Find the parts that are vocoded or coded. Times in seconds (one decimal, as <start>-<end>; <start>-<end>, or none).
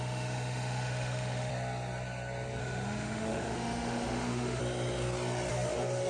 0.0-1.5; 2.6-4.6; 5.5-6.1